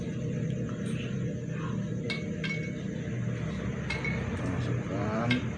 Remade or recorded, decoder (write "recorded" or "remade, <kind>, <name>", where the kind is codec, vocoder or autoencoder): recorded